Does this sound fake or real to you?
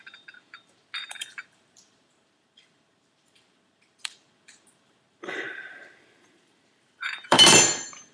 fake